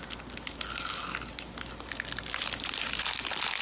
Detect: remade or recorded recorded